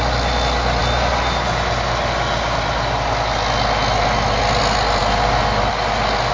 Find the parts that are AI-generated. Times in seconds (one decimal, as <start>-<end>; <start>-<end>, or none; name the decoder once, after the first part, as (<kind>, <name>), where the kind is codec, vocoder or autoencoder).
none